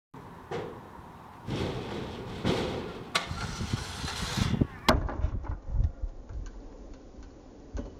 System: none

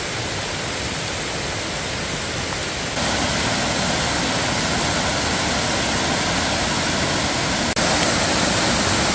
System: none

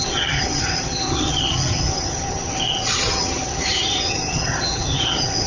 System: vocoder, HiFi-GAN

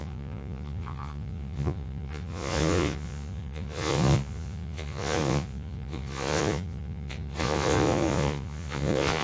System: vocoder, Vocos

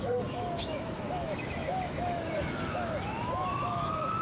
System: autoencoder, DAC-VAE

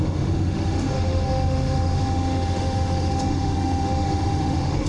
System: autoencoder, DAC-VAE